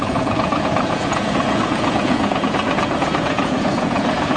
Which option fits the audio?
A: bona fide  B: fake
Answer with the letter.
B